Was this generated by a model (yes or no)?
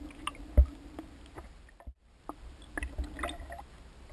no